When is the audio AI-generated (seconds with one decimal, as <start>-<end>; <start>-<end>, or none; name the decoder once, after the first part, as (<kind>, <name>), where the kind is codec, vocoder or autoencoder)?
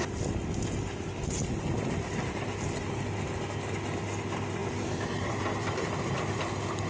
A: 4.6-6.4 (vocoder, BigVGAN v2)